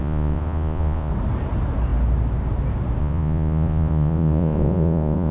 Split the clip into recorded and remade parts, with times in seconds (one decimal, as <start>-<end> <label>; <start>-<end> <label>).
0.0-1.1 remade; 1.1-3.0 recorded; 3.0-5.3 remade